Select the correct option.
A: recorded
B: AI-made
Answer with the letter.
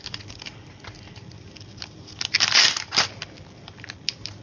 A